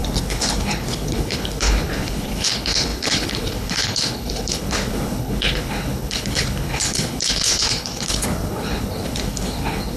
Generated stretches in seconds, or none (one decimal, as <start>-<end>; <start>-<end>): 0.0-10.0